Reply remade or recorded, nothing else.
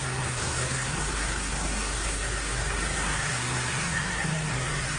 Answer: remade